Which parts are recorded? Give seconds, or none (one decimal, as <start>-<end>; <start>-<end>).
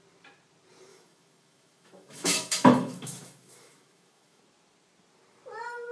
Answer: 0.0-0.9; 4.4-5.9